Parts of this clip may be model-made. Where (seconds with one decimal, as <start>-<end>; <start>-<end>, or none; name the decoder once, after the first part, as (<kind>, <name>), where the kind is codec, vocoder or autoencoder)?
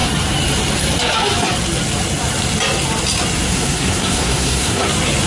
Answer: 3.5-4.8 (codec, SNAC)